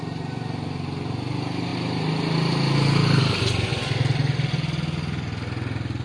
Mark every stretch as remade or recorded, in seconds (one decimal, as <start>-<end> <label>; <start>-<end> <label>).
0.0-6.0 recorded